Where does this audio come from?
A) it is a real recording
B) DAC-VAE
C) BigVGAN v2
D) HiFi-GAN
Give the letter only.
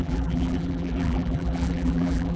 C